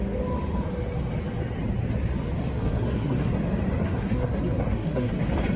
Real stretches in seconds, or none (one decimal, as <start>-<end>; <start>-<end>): 0.0-2.4; 3.3-3.8; 5.1-5.6